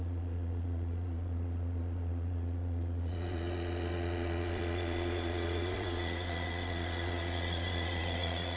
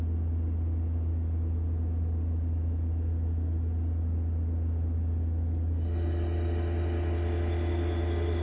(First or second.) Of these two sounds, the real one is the second